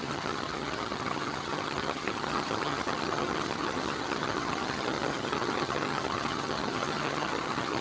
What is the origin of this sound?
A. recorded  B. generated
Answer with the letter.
B